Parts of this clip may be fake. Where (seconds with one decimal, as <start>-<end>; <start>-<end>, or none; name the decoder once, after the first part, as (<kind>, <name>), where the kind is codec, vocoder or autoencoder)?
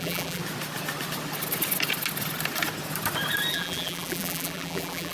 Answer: 0.0-0.4 (vocoder, BigVGAN v2); 3.5-5.1